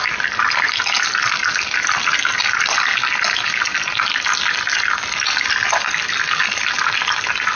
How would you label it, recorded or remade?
recorded